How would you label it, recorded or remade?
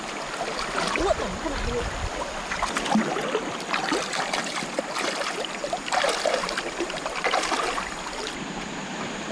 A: recorded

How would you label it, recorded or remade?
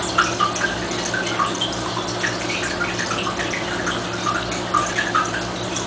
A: recorded